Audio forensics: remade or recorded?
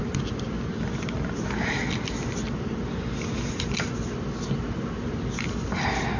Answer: recorded